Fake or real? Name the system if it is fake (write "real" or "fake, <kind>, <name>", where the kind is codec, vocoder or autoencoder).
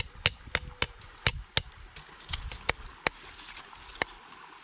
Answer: real